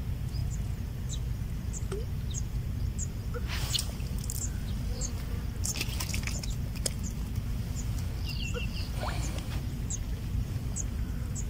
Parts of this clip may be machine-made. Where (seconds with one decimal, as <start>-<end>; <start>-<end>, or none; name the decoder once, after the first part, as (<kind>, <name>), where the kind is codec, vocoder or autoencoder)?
none